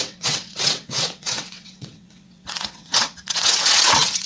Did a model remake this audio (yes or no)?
yes